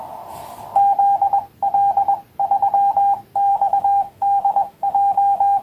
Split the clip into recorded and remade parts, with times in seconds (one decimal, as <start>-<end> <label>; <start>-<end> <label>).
0.0-3.5 recorded; 3.5-5.6 remade